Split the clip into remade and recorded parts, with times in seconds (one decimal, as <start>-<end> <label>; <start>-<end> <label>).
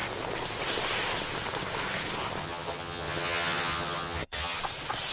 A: 0.0-2.4 recorded; 2.4-4.6 remade; 4.6-5.1 recorded